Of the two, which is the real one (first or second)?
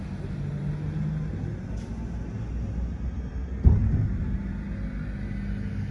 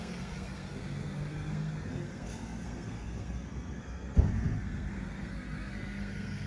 first